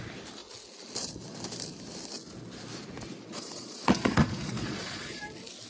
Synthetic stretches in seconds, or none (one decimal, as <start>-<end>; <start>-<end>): 3.3-5.2